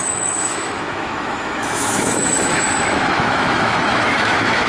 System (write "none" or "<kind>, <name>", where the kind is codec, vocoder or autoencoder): autoencoder, DAC-VAE